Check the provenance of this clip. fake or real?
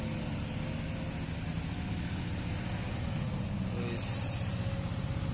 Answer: real